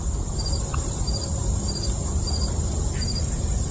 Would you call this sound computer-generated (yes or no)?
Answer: no